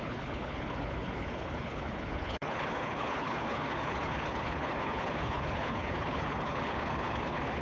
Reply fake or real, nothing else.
fake